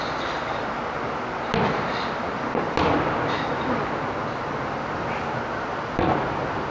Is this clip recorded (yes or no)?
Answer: yes